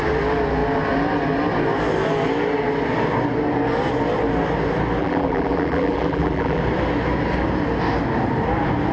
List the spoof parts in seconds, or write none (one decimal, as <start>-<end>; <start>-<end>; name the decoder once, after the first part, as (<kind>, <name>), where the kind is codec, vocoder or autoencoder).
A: 5.0-6.6 (vocoder, BigVGAN v2)